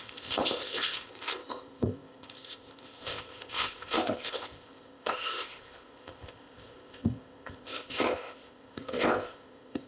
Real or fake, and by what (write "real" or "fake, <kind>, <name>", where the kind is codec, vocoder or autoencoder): fake, codec, ZipCodec